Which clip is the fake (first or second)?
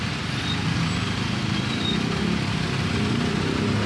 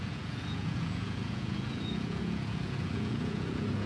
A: second